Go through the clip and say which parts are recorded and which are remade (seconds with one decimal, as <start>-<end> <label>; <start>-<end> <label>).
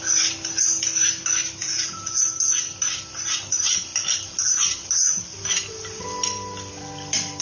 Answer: 0.0-1.6 recorded; 1.6-2.3 remade; 2.3-7.4 recorded